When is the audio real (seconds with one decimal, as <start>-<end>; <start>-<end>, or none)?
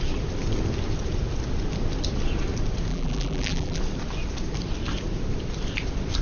0.0-2.9; 3.8-6.2